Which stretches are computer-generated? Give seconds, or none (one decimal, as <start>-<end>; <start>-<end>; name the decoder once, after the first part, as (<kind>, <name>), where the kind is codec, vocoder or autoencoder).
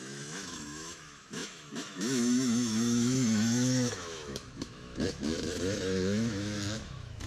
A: 0.0-7.3 (autoencoder, DAC-VAE)